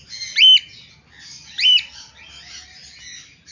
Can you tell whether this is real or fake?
real